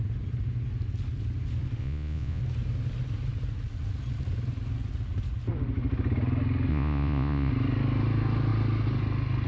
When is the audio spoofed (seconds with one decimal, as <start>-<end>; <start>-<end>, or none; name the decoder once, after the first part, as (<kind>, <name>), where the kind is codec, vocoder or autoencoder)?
1.8-2.4 (vocoder, Vocos); 6.7-7.5